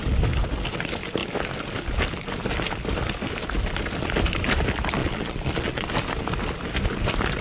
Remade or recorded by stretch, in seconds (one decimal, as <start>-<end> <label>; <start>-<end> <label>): 0.0-5.0 recorded; 5.0-5.9 remade; 5.9-7.4 recorded